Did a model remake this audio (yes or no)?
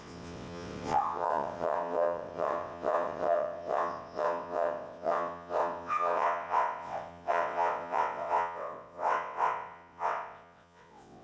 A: yes